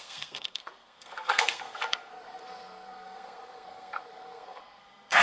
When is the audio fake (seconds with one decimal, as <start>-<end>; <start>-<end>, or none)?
0.0-5.2